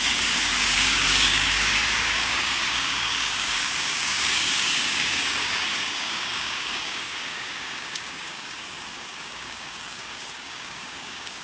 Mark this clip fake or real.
fake